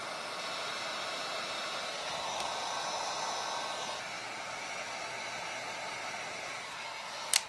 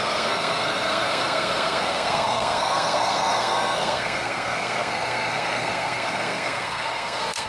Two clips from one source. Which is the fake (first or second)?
second